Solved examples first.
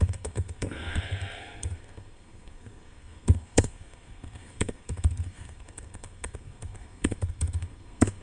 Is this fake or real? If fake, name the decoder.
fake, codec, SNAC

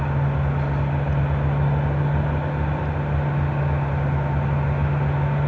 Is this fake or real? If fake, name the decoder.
real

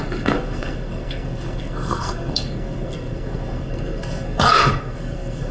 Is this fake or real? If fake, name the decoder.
fake, codec, SNAC